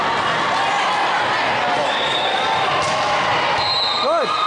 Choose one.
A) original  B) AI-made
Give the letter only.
A